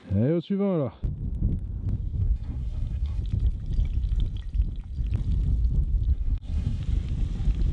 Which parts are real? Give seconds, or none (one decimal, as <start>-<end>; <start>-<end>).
0.0-2.2; 3.2-6.1; 6.8-7.7